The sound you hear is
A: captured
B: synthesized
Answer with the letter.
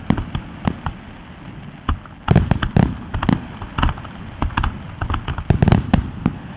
A